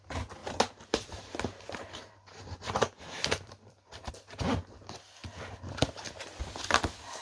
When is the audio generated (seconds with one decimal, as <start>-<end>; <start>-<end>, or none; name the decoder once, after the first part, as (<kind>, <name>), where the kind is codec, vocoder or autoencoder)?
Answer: 0.4-4.1 (vocoder, BigVGAN v2); 5.3-6.4